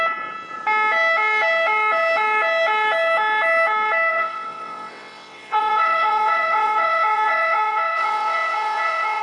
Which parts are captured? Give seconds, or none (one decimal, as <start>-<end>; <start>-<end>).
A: 0.0-4.1